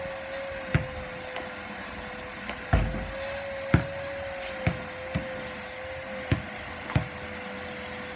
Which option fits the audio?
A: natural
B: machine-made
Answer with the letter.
A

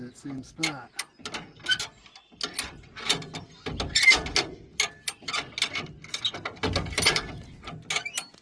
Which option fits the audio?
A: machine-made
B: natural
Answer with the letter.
B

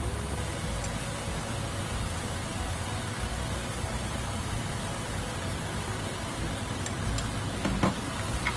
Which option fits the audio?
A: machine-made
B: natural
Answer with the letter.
B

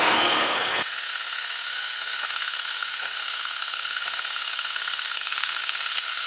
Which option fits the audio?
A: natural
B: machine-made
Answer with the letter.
B